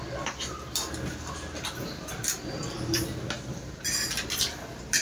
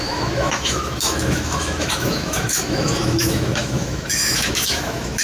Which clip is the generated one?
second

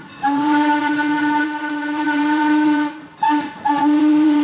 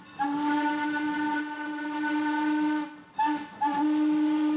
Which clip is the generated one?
first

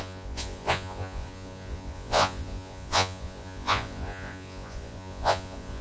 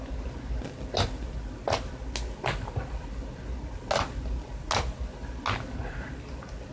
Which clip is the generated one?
first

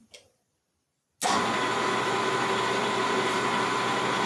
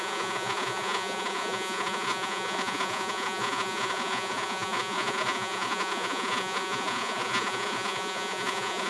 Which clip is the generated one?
second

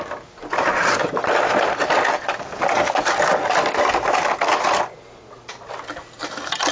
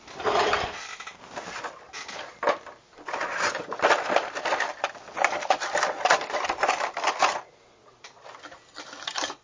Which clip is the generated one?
second